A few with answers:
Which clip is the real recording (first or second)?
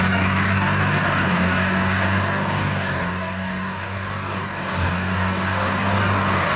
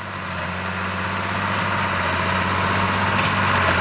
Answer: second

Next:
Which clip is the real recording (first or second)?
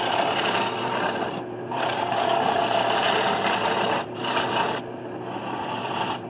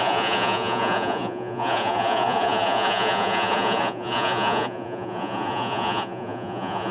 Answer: first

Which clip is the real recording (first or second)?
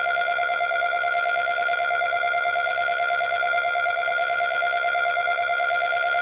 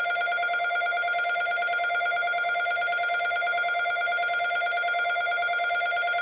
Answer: second